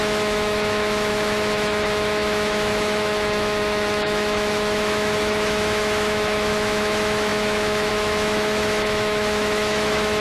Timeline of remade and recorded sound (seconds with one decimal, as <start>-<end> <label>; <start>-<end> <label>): 0.0-10.2 remade